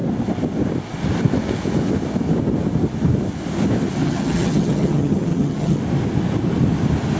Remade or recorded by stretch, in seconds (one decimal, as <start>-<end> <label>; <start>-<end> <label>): 0.0-4.0 recorded; 4.0-5.8 remade; 5.8-7.2 recorded